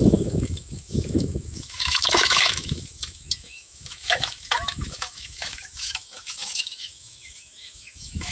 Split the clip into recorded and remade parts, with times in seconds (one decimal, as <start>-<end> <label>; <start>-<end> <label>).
0.0-8.3 remade